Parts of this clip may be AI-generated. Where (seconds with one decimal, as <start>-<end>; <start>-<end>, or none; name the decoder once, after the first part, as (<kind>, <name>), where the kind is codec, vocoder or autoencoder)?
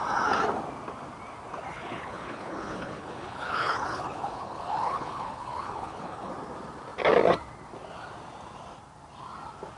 1.7-6.3 (codec, HILCodec)